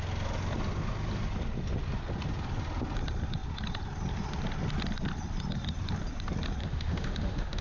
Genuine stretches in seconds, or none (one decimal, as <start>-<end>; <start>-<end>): 0.0-6.6